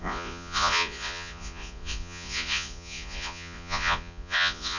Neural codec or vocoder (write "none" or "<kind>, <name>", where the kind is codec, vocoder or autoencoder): vocoder, Vocos